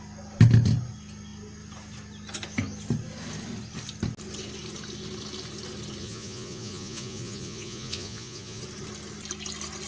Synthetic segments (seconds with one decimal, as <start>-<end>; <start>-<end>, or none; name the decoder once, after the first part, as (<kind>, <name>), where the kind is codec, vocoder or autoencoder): 6.0-8.6 (vocoder, Vocos)